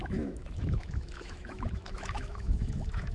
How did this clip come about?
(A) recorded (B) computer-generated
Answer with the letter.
B